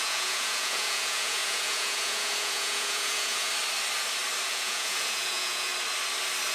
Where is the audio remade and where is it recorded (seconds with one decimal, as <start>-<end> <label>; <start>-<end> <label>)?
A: 0.0-3.5 remade; 3.5-4.5 recorded; 4.5-5.7 remade; 5.7-6.5 recorded